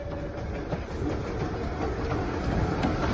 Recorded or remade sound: recorded